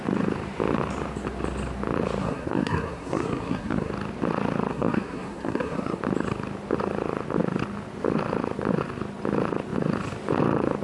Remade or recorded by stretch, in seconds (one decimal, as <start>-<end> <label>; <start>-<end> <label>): 0.0-2.2 recorded; 2.2-3.9 remade; 3.9-4.7 recorded; 4.7-6.0 remade; 6.0-10.8 recorded